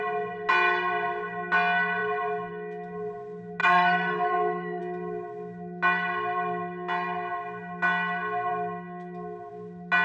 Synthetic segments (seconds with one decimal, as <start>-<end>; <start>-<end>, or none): 3.6-4.8